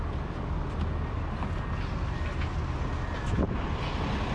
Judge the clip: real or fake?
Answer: real